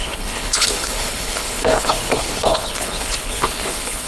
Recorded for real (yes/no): no